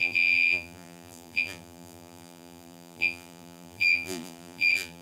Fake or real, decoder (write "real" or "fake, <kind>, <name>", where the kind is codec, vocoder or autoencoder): fake, vocoder, BigVGAN v2